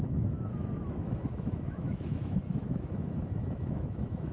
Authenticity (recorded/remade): remade